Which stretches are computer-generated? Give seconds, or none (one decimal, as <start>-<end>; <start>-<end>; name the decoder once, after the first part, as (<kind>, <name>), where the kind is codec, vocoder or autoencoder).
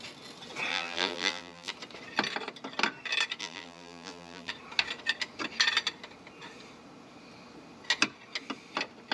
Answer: 0.7-1.7 (vocoder, BigVGAN v2); 3.4-4.5